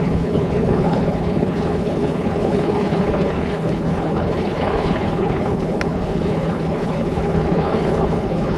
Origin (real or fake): fake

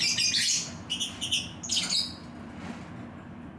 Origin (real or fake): real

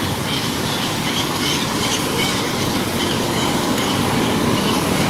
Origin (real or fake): fake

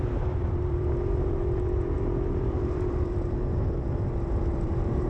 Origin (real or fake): fake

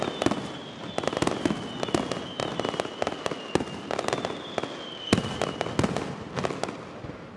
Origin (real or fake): real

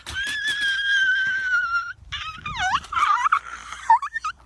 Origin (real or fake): fake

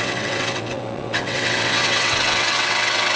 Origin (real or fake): fake